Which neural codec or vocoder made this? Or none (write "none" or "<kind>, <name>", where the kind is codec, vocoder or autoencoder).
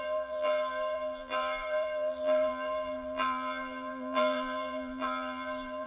vocoder, BigVGAN v2